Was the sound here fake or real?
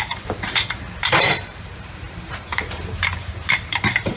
fake